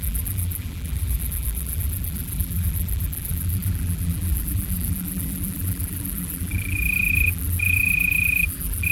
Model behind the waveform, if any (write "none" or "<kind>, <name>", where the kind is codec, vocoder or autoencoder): vocoder, BigVGAN v2